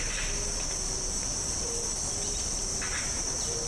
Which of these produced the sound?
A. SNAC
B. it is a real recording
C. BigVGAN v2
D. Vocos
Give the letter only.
B